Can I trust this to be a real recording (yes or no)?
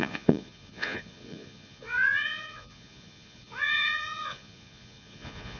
no